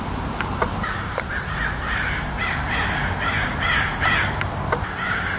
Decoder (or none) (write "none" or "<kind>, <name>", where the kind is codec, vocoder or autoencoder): vocoder, BigVGAN v2